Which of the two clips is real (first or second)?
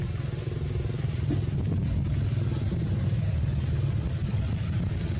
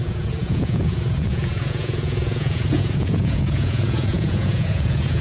first